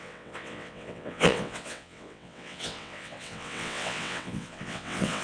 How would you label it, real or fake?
fake